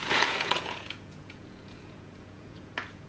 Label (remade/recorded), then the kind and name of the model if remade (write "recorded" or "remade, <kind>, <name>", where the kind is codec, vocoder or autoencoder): remade, vocoder, Vocos